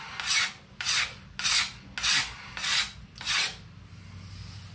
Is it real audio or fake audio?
real